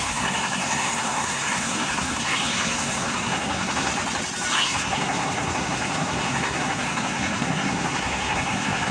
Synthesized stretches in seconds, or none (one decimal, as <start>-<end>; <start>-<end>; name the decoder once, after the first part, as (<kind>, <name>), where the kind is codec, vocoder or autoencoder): 0.0-3.9 (codec, SNAC); 4.5-8.9

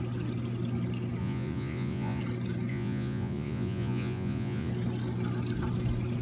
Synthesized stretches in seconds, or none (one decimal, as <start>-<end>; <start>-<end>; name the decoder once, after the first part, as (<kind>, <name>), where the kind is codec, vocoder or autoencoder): 1.2-2.2 (vocoder, Vocos); 2.7-4.7

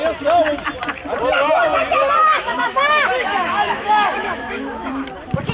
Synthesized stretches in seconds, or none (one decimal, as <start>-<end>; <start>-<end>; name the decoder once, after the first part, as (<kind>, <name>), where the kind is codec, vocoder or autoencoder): 2.2-5.1 (autoencoder, DAC-VAE)

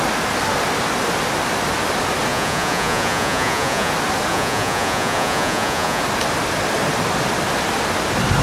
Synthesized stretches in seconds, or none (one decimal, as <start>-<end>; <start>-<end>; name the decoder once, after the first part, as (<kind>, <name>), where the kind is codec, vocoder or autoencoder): 2.3-3.9 (vocoder, Vocos); 4.3-6.0

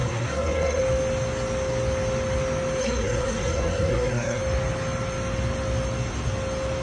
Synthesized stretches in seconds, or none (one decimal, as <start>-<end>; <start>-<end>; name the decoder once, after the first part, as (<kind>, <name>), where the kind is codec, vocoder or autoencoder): 0.0-0.8 (codec, SNAC); 2.8-4.4